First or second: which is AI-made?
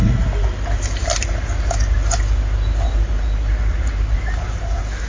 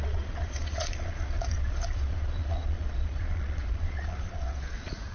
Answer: second